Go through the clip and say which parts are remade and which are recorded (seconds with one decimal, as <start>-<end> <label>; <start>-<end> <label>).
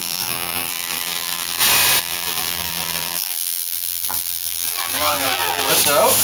0.0-1.6 remade; 1.6-2.0 recorded; 2.0-5.7 remade; 5.7-6.2 recorded